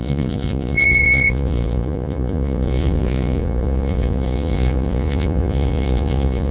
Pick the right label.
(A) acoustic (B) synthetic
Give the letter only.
B